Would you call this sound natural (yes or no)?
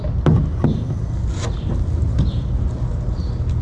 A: yes